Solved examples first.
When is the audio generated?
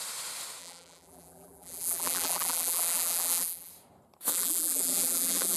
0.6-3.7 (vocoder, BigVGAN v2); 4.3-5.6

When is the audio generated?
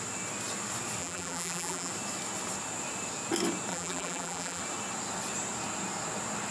1.0-1.9 (vocoder, BigVGAN v2); 3.7-4.6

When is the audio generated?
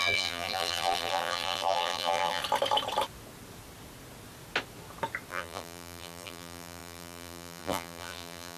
0.0-2.4 (vocoder, BigVGAN v2); 5.3-8.6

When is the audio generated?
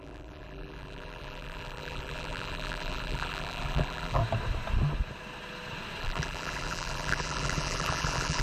0.0-4.2 (vocoder, BigVGAN v2); 6.0-8.4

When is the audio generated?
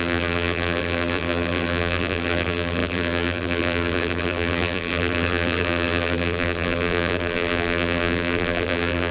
0.0-9.1 (vocoder, BigVGAN v2)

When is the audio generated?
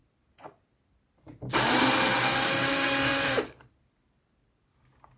none